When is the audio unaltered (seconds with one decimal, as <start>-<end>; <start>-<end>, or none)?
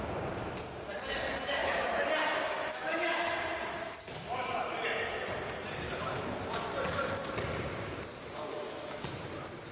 0.0-1.6; 2.1-2.5; 3.3-8.5; 9.2-9.7